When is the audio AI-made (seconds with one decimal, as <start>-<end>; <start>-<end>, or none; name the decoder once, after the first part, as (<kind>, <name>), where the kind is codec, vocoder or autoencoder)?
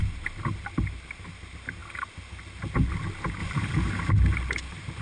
3.4-4.1 (vocoder, BigVGAN v2)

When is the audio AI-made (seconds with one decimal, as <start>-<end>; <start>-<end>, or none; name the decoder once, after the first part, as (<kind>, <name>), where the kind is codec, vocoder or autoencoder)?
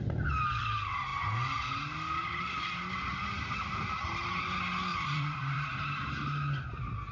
4.9-5.8 (vocoder, BigVGAN v2)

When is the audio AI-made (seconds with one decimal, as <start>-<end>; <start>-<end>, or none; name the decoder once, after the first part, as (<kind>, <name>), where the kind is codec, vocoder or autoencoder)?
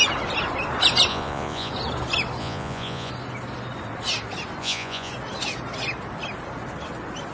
1.1-1.7 (vocoder, Vocos); 2.4-3.1; 4.6-5.1